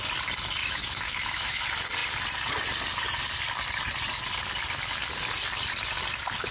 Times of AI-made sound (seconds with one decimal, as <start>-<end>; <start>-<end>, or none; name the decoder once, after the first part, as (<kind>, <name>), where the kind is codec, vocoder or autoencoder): 0.6-1.6 (autoencoder, DAC-VAE)